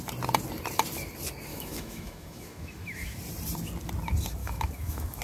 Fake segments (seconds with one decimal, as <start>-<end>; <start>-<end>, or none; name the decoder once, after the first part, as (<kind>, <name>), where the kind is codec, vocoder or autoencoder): 1.5-3.2 (autoencoder, DAC-VAE); 4.4-5.2